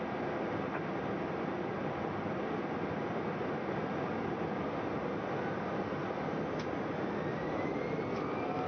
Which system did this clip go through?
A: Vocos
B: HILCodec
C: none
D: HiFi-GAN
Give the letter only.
C